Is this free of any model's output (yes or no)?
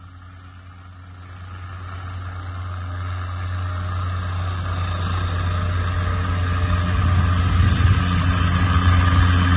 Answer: yes